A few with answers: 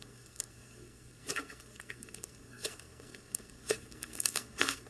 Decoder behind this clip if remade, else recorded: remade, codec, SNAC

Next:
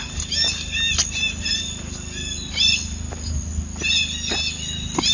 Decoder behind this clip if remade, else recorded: recorded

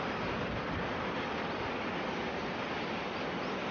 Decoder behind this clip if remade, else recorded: recorded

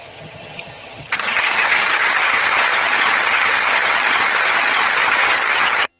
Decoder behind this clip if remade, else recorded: remade, vocoder, HiFi-GAN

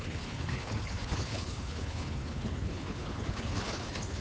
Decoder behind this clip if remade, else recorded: remade, codec, HILCodec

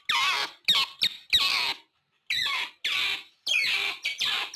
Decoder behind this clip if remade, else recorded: recorded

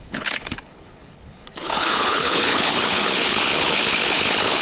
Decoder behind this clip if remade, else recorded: remade, codec, HILCodec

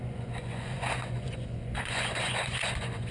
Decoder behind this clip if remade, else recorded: remade, vocoder, Vocos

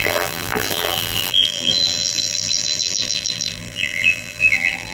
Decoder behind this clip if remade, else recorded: remade, vocoder, BigVGAN v2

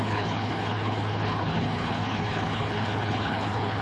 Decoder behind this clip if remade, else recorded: remade, codec, HILCodec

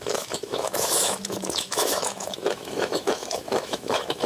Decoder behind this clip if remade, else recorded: remade, autoencoder, DAC-VAE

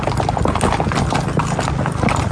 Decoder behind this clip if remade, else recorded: recorded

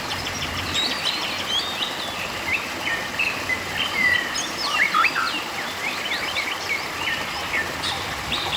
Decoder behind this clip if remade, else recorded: remade, vocoder, BigVGAN v2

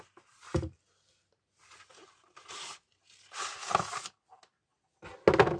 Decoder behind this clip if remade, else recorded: recorded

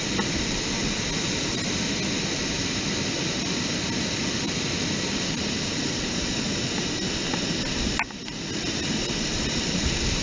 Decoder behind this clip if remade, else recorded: recorded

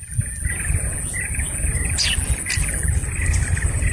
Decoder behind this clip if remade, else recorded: recorded